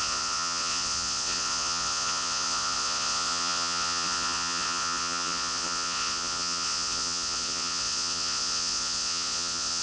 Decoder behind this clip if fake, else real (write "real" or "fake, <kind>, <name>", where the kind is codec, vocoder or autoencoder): fake, vocoder, Vocos